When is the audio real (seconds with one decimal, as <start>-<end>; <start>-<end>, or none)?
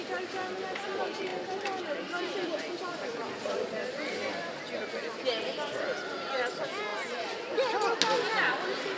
0.0-9.0